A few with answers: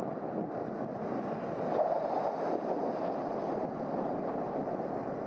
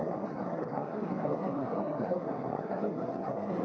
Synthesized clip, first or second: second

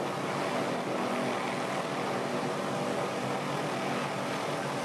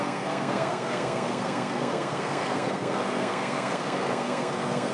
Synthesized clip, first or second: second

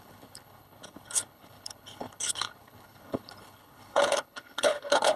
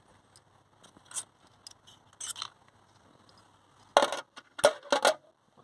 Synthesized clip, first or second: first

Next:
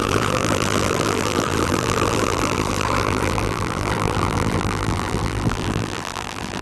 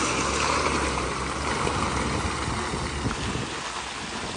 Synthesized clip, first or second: first